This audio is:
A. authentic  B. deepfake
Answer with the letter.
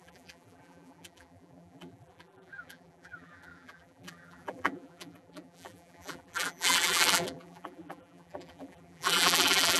B